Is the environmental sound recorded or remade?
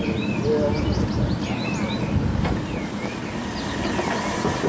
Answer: recorded